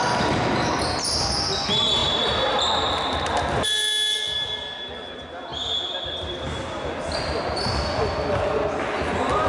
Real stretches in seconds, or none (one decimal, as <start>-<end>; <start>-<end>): 0.0-9.5